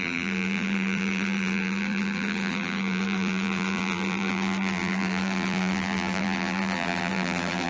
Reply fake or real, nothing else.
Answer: fake